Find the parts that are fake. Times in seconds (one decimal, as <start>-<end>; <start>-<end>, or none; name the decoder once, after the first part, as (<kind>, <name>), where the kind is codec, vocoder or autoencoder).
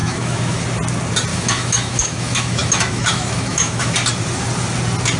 0.0-0.6 (autoencoder, DAC-VAE); 1.3-3.9